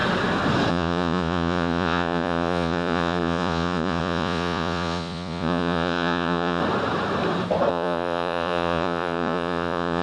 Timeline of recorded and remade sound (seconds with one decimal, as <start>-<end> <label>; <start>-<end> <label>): 0.0-0.7 recorded; 0.7-6.6 remade; 6.6-7.7 recorded; 7.7-10.0 remade